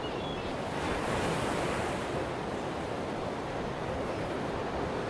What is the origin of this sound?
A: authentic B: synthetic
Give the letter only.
A